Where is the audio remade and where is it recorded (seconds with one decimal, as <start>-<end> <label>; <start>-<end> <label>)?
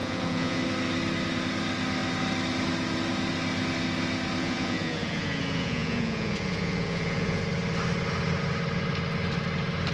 0.0-0.6 remade; 0.6-4.4 recorded; 4.4-7.4 remade; 7.4-9.9 recorded